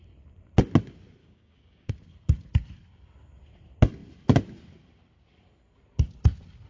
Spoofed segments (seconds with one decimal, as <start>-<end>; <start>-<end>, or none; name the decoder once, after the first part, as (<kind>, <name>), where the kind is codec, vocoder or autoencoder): 1.2-1.9 (codec, DAC)